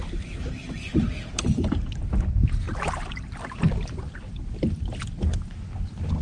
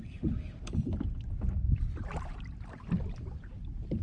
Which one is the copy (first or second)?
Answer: second